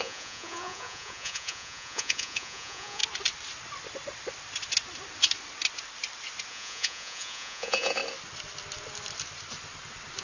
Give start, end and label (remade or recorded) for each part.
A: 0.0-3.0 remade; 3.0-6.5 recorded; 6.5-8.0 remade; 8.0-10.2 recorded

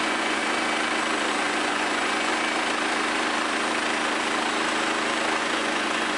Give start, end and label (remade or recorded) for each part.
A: 0.0-0.4 remade; 0.4-1.3 recorded; 1.3-2.3 remade; 2.3-5.4 recorded; 5.4-6.2 remade

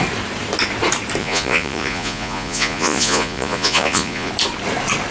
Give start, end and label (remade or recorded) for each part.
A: 0.0-1.2 recorded; 1.2-4.3 remade; 4.3-5.1 recorded

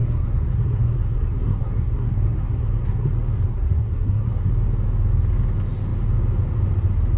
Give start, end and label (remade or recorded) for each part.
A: 0.0-3.1 remade; 3.1-3.5 recorded; 3.5-4.5 remade; 4.5-7.2 recorded

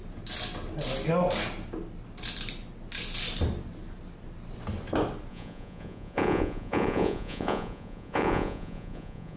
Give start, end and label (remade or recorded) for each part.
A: 0.0-5.3 recorded; 5.3-9.4 remade

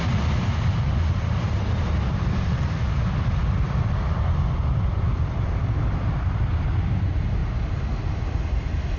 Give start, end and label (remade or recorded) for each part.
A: 0.0-7.4 remade; 7.4-8.3 recorded; 8.3-9.0 remade

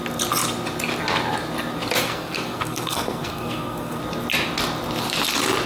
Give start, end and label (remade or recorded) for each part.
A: 0.0-2.0 recorded; 2.0-4.0 remade; 4.0-5.7 recorded